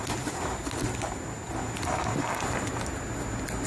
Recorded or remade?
recorded